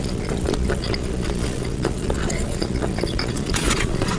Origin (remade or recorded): remade